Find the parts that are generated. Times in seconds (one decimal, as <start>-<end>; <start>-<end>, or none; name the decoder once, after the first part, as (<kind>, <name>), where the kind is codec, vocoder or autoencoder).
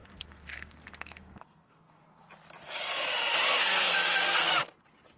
0.0-2.0 (codec, SNAC); 3.6-4.5